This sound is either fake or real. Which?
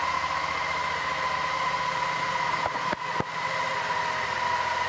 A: real